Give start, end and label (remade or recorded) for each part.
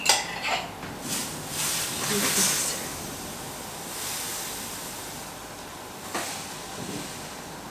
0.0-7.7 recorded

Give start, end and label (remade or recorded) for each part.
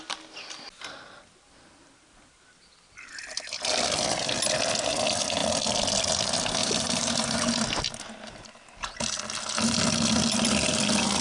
0.0-6.6 recorded; 6.6-7.4 remade; 7.4-11.2 recorded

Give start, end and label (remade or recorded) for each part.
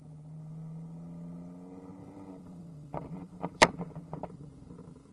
0.0-2.0 recorded; 2.0-5.1 remade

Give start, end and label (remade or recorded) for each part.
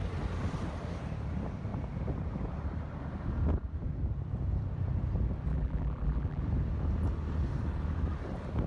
0.0-5.5 recorded; 5.5-6.4 remade; 6.4-8.7 recorded